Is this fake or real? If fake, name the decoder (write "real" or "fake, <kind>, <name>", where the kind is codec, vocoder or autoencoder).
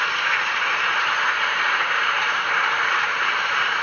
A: fake, vocoder, BigVGAN v2